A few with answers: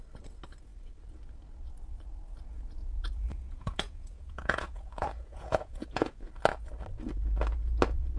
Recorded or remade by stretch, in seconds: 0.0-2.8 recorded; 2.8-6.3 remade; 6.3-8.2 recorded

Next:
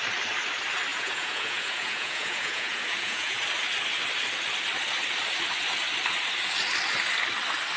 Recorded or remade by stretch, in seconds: 0.0-0.9 recorded; 0.9-3.4 remade; 3.4-7.8 recorded

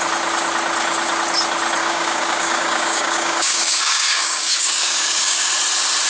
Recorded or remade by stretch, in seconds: 0.0-1.8 recorded; 1.8-5.5 remade; 5.5-6.1 recorded

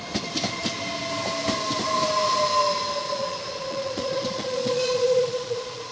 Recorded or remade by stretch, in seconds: 0.0-3.0 recorded; 3.0-5.9 remade